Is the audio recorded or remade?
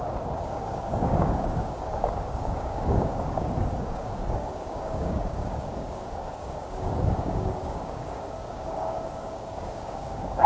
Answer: remade